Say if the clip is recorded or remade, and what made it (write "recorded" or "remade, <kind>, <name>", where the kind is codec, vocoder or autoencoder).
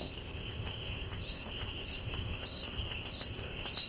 remade, codec, ZipCodec